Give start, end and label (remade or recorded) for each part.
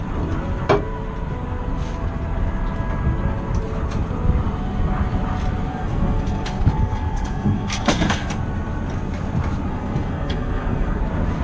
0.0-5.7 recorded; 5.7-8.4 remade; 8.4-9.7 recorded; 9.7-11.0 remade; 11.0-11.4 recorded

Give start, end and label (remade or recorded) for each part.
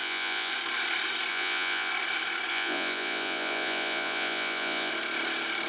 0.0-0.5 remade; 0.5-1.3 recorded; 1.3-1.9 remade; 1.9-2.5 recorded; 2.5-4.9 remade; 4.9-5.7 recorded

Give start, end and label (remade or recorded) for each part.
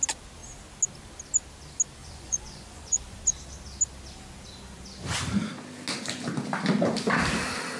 0.0-2.0 recorded; 2.0-3.2 remade; 3.2-7.8 recorded